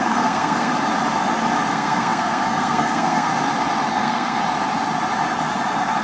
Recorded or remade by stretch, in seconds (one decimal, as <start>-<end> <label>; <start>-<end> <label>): 0.0-0.7 remade; 0.7-1.7 recorded; 1.7-3.3 remade; 3.3-3.9 recorded; 3.9-4.4 remade; 4.4-6.0 recorded